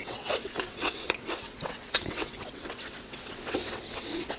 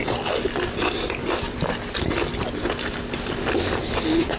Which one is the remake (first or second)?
first